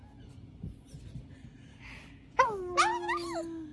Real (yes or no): yes